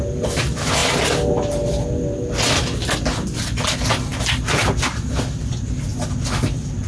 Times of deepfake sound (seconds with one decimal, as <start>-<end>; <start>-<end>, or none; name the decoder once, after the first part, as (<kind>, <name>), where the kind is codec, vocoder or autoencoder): none